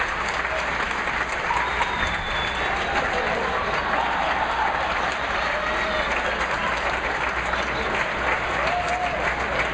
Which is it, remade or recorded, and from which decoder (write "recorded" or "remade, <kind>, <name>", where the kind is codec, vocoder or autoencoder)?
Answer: recorded